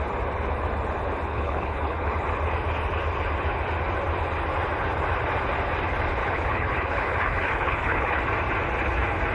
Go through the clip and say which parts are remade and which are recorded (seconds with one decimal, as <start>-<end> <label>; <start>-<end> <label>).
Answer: 0.0-1.3 recorded; 1.3-2.1 remade; 2.1-6.2 recorded; 6.2-8.2 remade; 8.2-9.3 recorded